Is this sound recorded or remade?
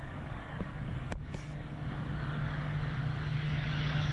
remade